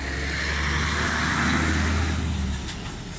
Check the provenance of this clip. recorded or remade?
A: recorded